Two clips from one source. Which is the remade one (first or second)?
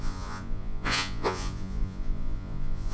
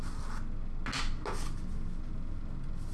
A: first